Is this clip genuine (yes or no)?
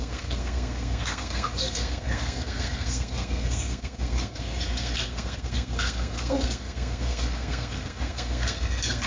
no